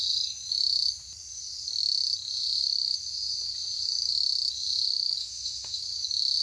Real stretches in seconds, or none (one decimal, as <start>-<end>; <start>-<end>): 0.0-5.2; 5.8-6.4